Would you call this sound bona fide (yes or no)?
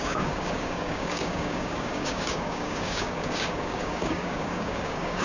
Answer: no